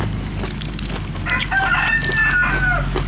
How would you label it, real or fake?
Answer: real